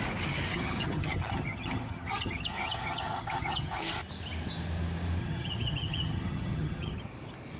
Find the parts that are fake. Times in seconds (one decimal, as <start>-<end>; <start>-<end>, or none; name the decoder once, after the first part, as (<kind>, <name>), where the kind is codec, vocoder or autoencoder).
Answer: 0.5-3.8 (vocoder, HiFi-GAN); 5.2-7.0